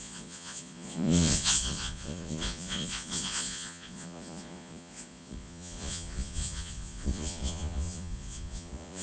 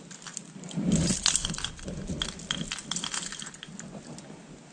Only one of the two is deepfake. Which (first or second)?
first